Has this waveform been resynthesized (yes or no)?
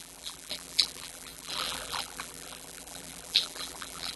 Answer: yes